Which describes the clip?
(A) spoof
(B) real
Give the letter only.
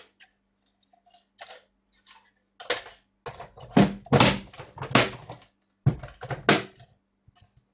B